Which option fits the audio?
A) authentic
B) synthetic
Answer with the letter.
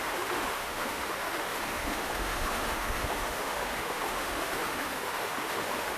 B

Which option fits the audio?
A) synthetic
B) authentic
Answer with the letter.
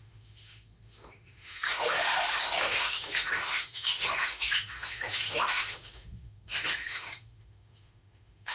A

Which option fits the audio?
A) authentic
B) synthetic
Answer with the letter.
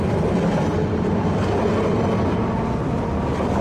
A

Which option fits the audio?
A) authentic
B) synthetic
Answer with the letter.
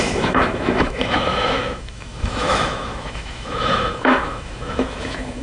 B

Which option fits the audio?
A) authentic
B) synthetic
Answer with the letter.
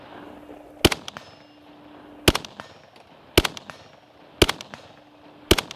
A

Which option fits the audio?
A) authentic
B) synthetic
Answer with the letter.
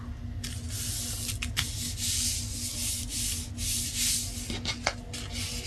A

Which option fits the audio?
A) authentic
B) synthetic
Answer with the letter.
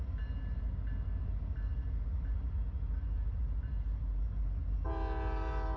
A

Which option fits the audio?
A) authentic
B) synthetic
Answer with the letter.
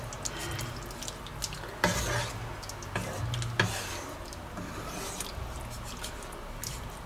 A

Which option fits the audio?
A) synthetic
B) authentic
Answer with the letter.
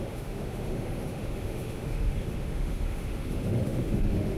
A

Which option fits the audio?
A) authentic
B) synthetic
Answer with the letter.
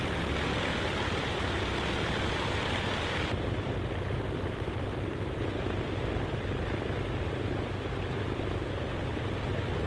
A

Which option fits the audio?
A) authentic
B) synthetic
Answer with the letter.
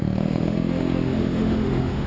B